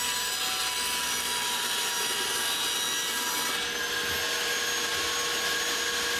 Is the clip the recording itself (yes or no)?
yes